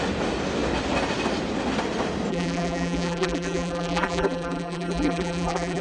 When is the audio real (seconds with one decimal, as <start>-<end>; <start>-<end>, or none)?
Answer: 0.0-2.3